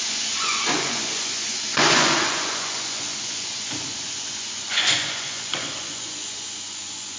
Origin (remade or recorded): remade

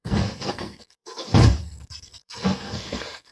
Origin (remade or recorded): remade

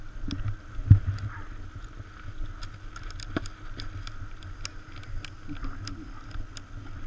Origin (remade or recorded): recorded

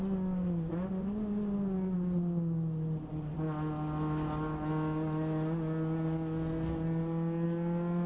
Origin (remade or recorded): recorded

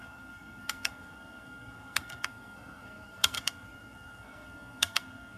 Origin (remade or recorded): remade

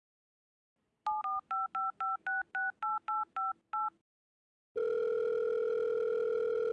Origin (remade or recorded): recorded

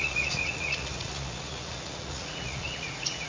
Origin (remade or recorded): remade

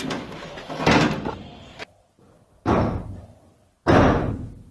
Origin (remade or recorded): recorded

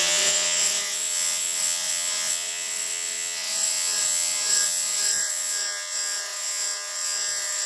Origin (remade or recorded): remade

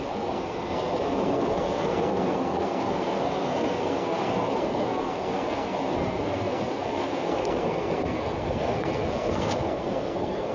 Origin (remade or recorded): remade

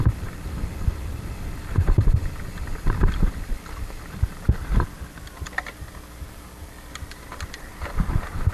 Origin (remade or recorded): remade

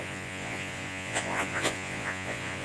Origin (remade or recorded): remade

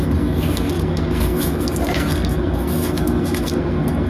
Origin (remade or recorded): remade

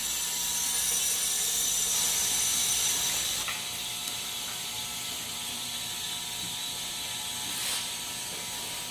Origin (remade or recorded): recorded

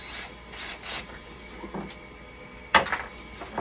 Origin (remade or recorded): recorded